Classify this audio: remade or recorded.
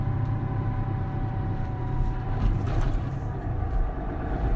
remade